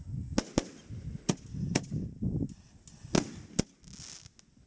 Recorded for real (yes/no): yes